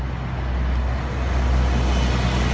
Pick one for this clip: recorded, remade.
recorded